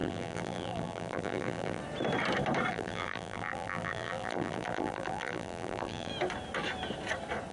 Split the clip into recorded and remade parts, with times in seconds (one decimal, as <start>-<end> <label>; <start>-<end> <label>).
0.0-1.8 remade; 1.8-2.7 recorded; 2.7-6.1 remade; 6.1-7.5 recorded